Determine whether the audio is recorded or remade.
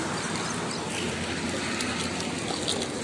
recorded